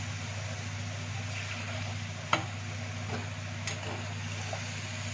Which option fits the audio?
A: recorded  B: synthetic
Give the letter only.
A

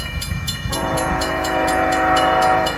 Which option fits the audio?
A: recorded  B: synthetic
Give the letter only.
B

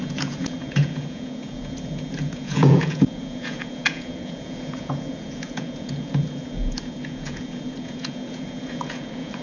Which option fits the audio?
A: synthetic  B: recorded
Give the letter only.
A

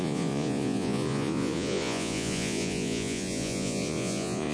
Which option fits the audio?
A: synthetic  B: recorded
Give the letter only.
A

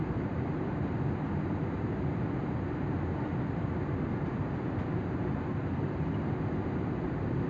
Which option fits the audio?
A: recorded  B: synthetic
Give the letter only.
A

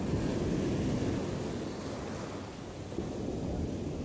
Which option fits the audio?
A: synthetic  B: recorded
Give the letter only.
B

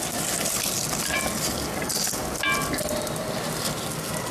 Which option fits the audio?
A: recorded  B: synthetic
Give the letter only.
A